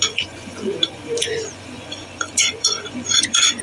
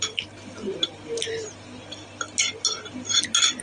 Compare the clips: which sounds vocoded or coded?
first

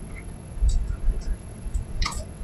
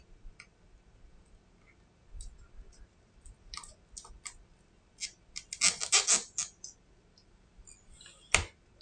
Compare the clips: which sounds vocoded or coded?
first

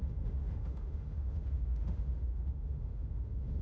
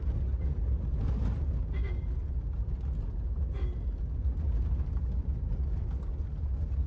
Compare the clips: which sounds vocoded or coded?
first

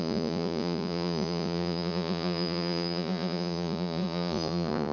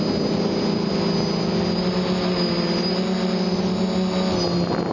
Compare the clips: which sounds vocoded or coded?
first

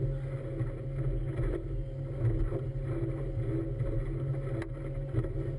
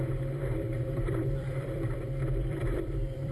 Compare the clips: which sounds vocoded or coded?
second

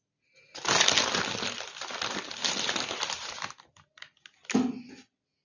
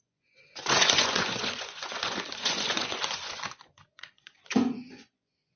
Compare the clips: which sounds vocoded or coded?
second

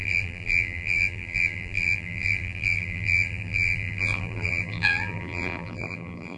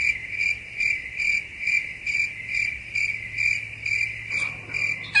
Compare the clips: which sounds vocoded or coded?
first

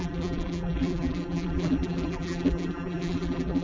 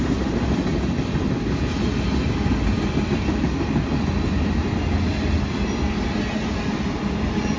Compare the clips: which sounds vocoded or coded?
first